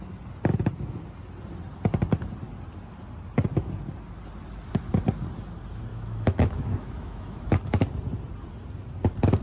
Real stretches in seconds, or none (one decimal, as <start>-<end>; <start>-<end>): 0.0-5.9; 7.4-9.4